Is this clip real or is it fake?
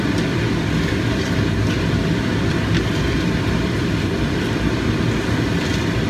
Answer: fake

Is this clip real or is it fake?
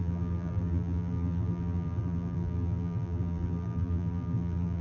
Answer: fake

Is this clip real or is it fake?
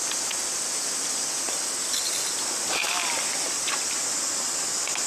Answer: real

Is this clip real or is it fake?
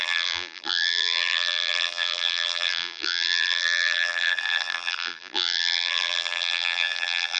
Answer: fake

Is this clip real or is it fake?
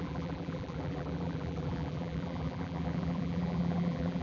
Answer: fake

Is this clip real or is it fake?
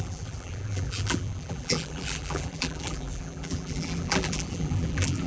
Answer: fake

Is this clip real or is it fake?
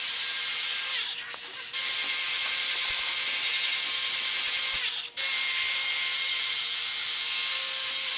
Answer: real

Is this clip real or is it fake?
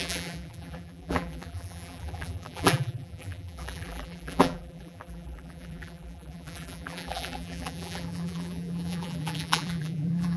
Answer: fake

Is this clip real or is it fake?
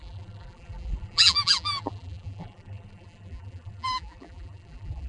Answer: fake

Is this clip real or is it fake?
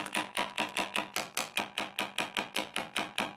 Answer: fake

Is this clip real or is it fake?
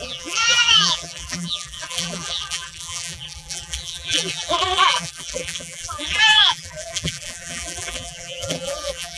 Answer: fake